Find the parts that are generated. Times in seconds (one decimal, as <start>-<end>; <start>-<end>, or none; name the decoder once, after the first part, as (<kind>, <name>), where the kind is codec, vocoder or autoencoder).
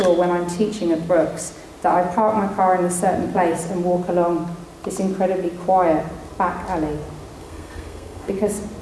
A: 7.4-8.3 (codec, SNAC)